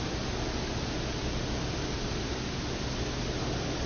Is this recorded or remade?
recorded